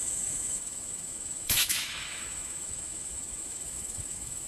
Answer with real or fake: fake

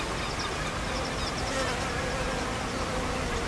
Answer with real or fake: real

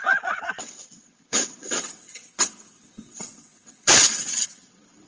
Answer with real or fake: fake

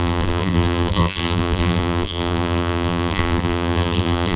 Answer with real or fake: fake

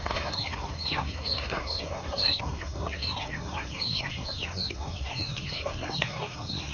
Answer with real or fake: fake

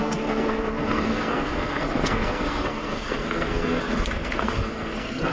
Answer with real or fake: fake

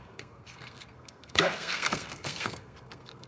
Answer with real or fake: fake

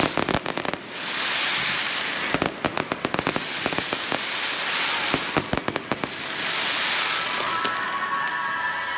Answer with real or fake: real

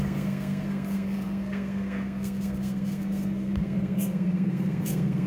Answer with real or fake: fake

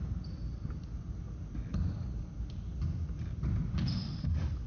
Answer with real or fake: real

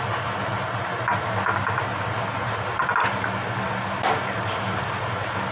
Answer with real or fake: real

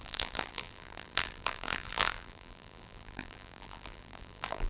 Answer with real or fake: fake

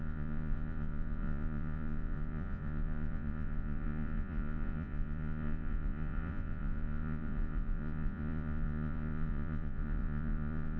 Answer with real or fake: fake